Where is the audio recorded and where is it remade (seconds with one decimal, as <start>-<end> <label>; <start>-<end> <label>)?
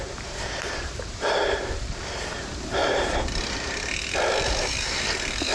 0.0-2.8 remade; 2.8-4.4 recorded; 4.4-5.5 remade